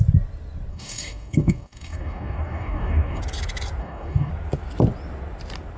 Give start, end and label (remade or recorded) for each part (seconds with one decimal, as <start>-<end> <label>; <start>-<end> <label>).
0.0-0.7 recorded; 0.7-3.2 remade; 3.2-3.8 recorded; 3.8-4.3 remade; 4.3-5.8 recorded